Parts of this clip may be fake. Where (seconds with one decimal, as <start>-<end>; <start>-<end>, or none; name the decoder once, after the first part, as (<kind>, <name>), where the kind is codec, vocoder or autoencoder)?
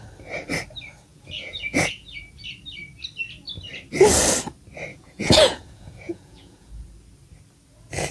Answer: 1.1-2.2 (vocoder, Vocos); 4.9-6.7